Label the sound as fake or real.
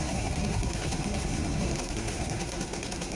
fake